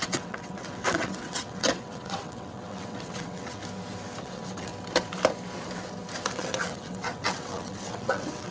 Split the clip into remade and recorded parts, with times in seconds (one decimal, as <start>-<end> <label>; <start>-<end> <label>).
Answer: 0.0-3.6 remade; 3.6-4.2 recorded; 4.2-4.7 remade; 4.7-6.3 recorded; 6.3-8.5 remade